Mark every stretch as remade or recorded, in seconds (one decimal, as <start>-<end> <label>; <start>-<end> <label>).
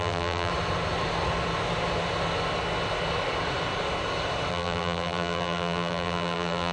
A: 0.0-0.5 remade; 0.5-4.5 recorded; 4.5-6.7 remade